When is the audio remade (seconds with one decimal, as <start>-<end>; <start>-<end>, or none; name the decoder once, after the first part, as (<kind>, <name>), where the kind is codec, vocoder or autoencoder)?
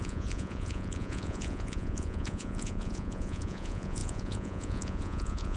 0.0-5.6 (vocoder, Vocos)